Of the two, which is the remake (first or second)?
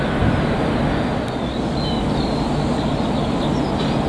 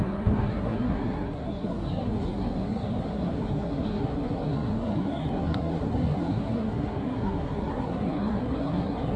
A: second